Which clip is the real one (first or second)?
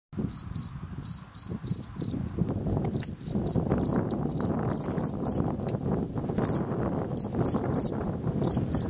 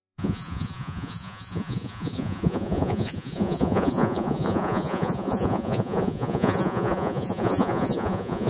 first